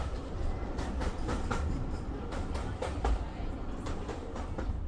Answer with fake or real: fake